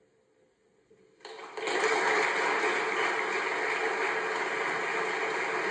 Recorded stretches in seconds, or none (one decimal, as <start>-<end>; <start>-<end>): 0.0-5.7